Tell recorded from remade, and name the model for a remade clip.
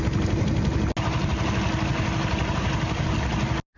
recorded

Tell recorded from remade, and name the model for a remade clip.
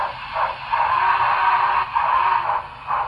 recorded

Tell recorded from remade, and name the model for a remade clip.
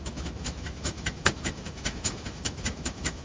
remade, autoencoder, DAC-VAE